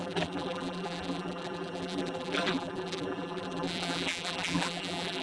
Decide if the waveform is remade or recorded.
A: remade